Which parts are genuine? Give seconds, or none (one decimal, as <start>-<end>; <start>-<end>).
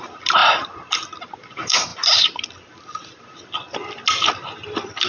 0.0-5.1